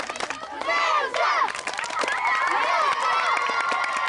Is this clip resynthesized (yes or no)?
no